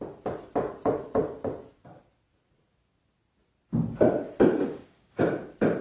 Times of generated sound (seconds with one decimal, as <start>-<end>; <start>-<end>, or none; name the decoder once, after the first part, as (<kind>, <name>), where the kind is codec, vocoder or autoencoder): 4.6-5.2 (codec, DAC)